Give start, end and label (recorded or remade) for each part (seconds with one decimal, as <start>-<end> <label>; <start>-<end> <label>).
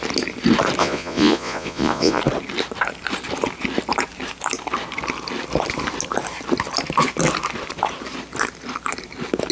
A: 0.0-0.8 recorded; 0.8-2.2 remade; 2.2-9.5 recorded